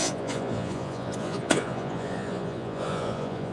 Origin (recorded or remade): remade